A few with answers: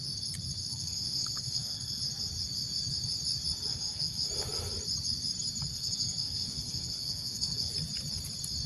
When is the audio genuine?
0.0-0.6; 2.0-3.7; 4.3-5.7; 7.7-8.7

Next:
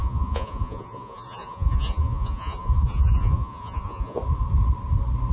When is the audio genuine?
4.2-5.3

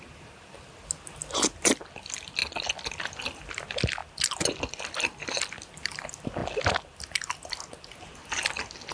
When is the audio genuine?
0.0-8.9